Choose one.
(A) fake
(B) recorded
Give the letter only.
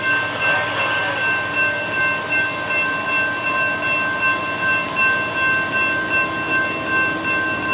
B